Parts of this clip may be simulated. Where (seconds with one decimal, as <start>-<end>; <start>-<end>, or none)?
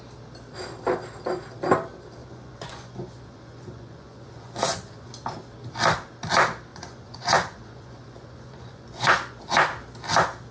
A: 2.2-5.1; 6.7-9.4